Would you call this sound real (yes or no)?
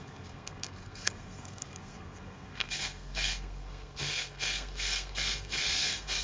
no